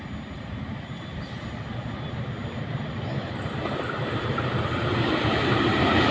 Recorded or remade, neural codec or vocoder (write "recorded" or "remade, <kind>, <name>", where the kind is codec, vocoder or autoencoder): recorded